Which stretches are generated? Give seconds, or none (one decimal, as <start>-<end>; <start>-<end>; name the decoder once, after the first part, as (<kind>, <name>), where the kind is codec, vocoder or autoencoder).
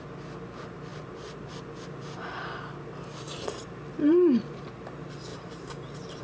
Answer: 0.9-1.5 (vocoder, BigVGAN v2); 3.9-4.6; 5.3-6.2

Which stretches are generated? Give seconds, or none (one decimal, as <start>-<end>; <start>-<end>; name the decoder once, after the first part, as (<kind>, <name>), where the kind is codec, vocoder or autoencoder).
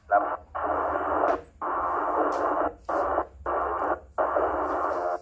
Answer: none